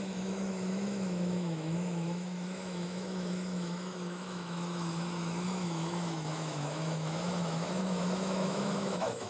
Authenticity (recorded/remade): remade